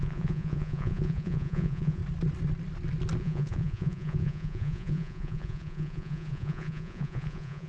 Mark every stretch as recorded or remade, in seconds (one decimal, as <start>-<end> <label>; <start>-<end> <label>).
0.0-2.0 remade; 2.0-3.2 recorded; 3.2-7.7 remade